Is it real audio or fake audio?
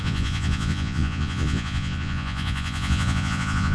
fake